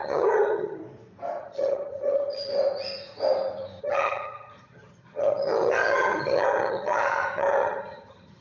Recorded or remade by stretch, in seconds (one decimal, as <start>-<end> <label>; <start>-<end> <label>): 0.0-0.8 remade; 0.8-1.4 recorded; 1.4-2.5 remade; 2.5-3.8 recorded; 3.8-8.4 remade